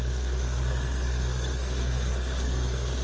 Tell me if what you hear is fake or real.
fake